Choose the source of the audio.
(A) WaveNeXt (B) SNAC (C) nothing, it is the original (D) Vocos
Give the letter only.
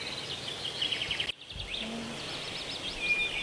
C